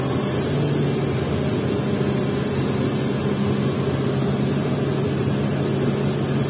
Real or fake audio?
real